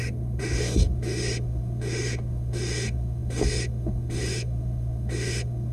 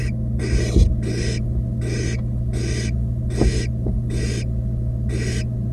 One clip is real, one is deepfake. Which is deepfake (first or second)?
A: first